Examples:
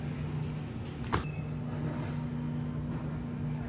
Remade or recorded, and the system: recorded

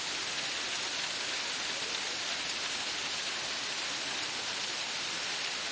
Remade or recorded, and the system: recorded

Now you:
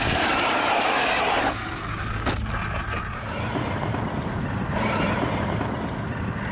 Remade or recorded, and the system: recorded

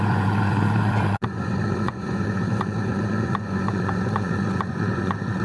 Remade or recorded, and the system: remade, vocoder, Vocos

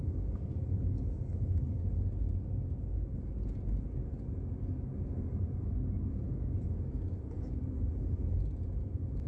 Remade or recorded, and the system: recorded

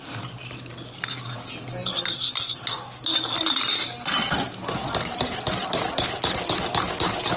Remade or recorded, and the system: recorded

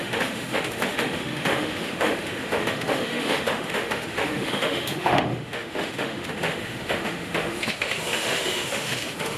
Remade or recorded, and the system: remade, autoencoder, DAC-VAE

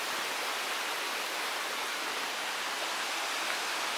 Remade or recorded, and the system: recorded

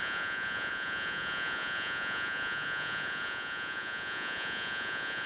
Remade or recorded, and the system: remade, vocoder, Vocos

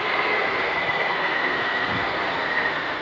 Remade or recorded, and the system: remade, codec, SNAC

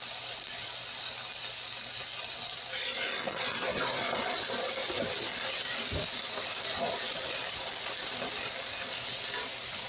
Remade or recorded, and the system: recorded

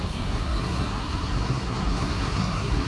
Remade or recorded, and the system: remade, codec, SNAC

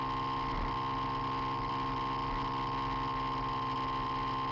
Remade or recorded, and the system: recorded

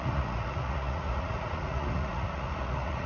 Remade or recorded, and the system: remade, vocoder, Vocos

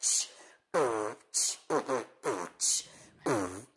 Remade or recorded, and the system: recorded